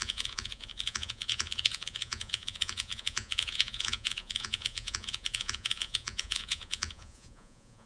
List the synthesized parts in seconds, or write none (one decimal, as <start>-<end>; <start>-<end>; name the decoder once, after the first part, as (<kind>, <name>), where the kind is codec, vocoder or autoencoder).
0.0-7.9 (vocoder, Vocos)

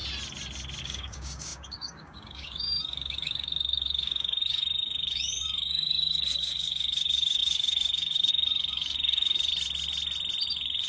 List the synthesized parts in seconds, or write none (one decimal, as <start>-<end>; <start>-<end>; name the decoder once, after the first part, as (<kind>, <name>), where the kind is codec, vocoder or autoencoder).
0.8-9.5 (codec, DAC); 10.5-10.9

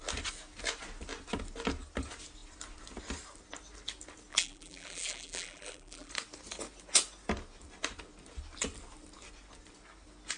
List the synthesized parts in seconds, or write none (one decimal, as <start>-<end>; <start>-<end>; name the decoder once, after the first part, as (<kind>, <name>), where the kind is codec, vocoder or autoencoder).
4.3-6.1 (vocoder, BigVGAN v2)

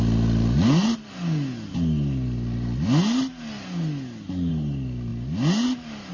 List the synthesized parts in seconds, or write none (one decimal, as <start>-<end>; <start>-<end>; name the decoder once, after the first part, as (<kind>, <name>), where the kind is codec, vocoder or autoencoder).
none

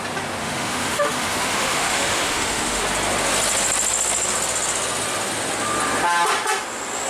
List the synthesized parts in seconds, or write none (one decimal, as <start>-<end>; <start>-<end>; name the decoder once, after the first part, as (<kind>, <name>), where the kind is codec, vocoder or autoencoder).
0.4-2.8 (autoencoder, DAC-VAE)